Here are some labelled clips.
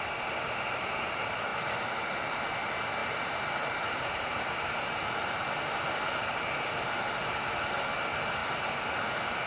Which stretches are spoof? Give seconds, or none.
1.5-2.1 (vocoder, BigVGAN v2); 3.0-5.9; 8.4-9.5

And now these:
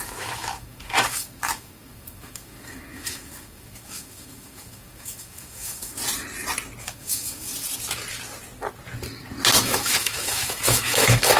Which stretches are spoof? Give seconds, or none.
0.0-6.0 (autoencoder, DAC-VAE); 6.8-7.5; 9.6-11.4